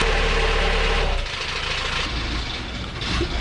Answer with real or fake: real